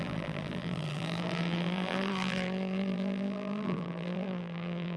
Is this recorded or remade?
remade